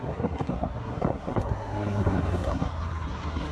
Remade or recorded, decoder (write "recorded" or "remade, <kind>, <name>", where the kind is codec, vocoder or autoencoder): remade, codec, SNAC